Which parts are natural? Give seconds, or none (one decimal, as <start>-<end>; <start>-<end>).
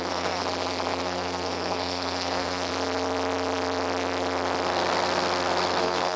0.4-1.0; 2.7-5.8